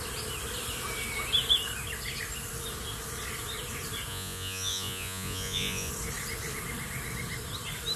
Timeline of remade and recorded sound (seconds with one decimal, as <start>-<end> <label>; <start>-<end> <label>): 0.0-4.1 recorded; 4.1-5.9 remade; 5.9-8.0 recorded